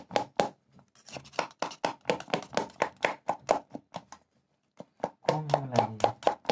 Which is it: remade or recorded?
recorded